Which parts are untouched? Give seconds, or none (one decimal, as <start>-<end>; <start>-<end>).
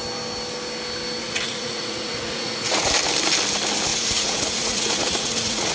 0.0-1.2; 2.8-3.9